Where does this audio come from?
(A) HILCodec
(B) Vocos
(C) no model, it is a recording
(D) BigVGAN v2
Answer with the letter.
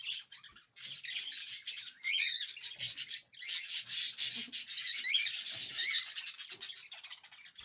C